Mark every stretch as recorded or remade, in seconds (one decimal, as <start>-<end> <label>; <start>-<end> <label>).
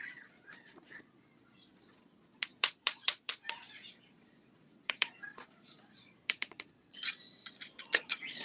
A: 0.0-8.4 remade